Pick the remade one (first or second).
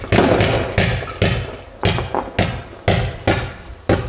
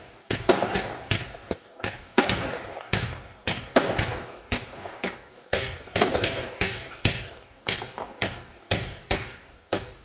second